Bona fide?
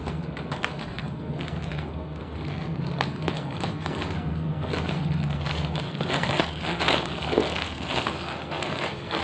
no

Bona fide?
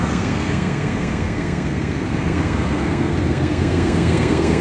no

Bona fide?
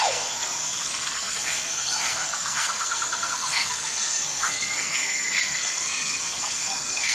no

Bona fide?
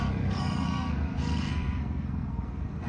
no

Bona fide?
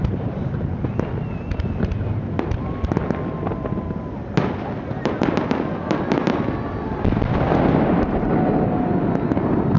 yes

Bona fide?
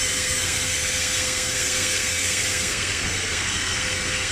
no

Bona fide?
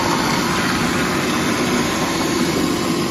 yes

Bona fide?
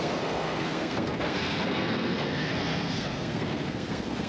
no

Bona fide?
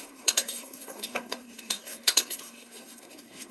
no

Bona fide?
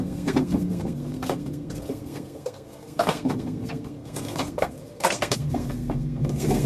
no